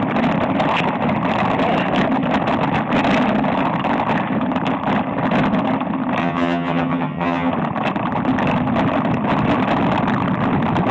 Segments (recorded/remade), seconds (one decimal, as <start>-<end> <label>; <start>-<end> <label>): 0.0-6.2 recorded; 6.2-7.5 remade; 7.5-10.9 recorded